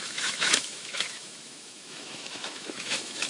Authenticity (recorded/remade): remade